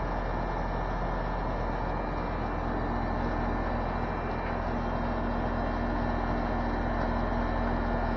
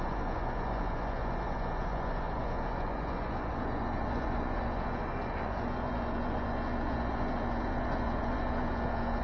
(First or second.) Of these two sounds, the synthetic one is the second